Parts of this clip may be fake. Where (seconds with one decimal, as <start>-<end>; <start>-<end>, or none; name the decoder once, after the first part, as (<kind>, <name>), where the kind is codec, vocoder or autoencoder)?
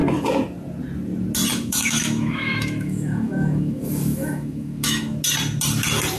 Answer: 1.5-5.2 (autoencoder, DAC-VAE)